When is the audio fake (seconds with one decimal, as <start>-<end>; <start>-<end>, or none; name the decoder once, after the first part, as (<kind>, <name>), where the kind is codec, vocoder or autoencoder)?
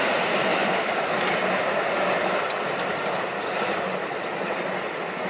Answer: none